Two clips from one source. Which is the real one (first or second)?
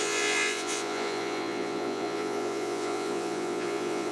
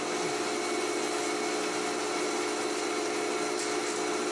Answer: second